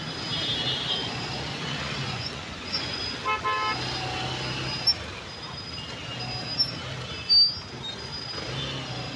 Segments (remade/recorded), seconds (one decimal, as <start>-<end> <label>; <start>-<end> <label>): 0.0-1.0 recorded; 1.0-3.0 remade; 3.0-9.2 recorded

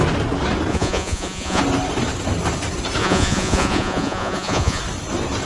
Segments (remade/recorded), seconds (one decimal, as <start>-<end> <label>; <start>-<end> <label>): 0.0-0.7 recorded; 0.7-1.6 remade; 1.6-3.0 recorded; 3.0-4.8 remade; 4.8-5.5 recorded

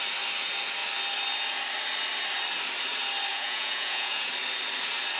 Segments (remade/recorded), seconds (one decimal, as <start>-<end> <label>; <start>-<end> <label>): 0.0-3.3 recorded; 3.3-4.3 remade; 4.3-5.2 recorded

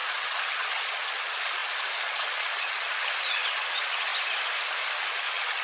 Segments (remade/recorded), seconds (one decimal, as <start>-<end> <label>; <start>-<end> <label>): 0.0-4.1 remade; 4.1-5.0 recorded; 5.0-5.6 remade

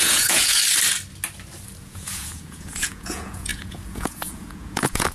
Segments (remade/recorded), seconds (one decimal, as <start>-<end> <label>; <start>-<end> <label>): 0.0-0.6 remade; 0.6-1.8 recorded; 1.8-5.1 remade